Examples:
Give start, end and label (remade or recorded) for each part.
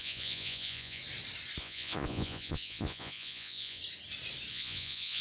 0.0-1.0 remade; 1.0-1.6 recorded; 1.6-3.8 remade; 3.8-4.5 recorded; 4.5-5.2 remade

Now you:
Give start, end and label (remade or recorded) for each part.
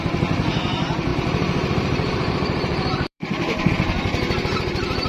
0.0-1.1 recorded; 1.1-3.7 remade; 3.7-5.1 recorded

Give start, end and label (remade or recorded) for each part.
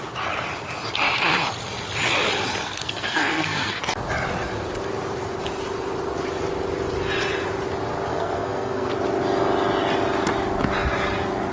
0.0-2.6 recorded; 2.6-3.8 remade; 3.8-8.1 recorded; 8.1-8.9 remade; 8.9-11.5 recorded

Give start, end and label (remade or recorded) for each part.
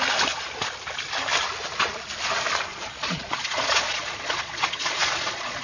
0.0-2.7 recorded; 2.7-5.6 remade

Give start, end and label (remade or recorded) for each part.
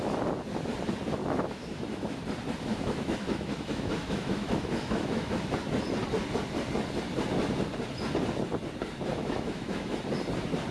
0.0-1.2 recorded; 1.2-2.2 remade; 2.2-2.7 recorded; 2.7-5.3 remade; 5.3-9.1 recorded; 9.1-10.0 remade; 10.0-10.7 recorded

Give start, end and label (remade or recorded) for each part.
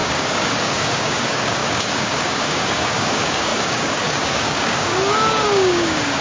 0.0-6.2 remade